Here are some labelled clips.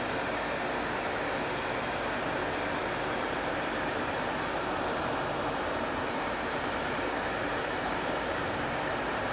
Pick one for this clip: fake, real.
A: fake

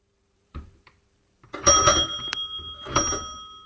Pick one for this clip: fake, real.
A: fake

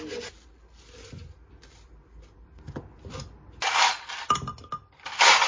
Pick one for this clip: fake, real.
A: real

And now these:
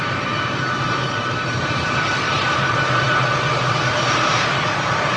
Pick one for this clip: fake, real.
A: fake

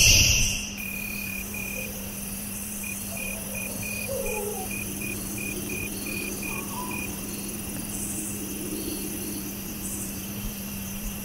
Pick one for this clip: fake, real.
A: fake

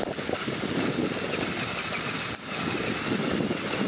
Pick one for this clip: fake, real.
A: real